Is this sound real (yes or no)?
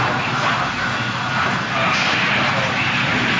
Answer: yes